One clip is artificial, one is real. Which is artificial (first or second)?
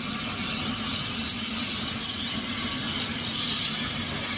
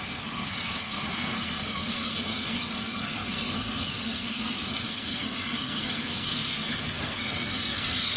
second